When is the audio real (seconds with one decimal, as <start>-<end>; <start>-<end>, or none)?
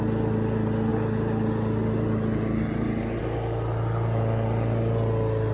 0.0-5.5